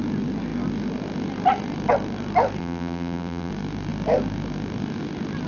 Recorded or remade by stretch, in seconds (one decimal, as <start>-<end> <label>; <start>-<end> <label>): 0.0-2.6 recorded; 2.6-3.5 remade; 3.5-5.5 recorded